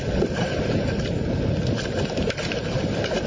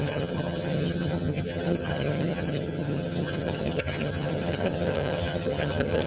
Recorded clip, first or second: first